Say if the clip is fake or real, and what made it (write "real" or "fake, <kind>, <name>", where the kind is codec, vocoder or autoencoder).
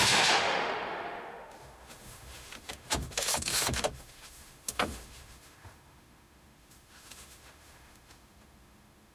fake, autoencoder, DAC-VAE